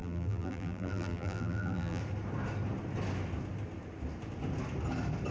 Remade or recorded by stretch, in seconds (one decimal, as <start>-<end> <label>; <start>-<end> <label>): 0.0-2.0 remade; 2.0-5.3 recorded